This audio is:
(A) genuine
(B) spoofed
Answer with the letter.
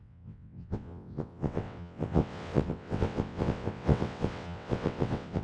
B